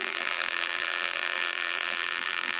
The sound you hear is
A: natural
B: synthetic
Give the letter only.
B